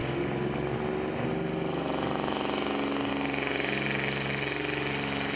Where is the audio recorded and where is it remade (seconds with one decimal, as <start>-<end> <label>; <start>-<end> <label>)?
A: 0.0-5.4 recorded